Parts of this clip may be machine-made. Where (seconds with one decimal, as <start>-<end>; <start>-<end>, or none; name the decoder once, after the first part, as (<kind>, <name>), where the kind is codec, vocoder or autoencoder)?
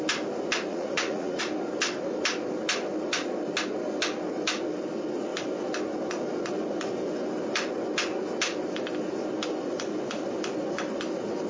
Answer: 0.7-1.4 (vocoder, Vocos)